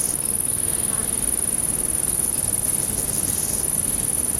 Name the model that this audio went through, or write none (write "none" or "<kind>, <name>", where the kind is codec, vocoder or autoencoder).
none